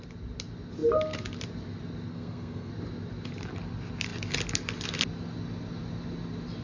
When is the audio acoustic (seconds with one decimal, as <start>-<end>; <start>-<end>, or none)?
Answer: 0.0-2.1; 2.7-6.6